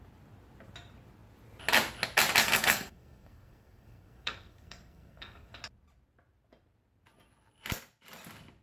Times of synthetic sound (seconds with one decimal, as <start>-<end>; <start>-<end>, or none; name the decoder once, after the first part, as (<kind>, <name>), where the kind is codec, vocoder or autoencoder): 2.4-5.6 (codec, SNAC)